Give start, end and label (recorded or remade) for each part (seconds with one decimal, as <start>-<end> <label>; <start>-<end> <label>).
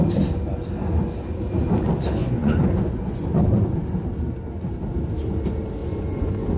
0.0-2.2 recorded; 2.2-3.8 remade; 3.8-5.8 recorded; 5.8-6.6 remade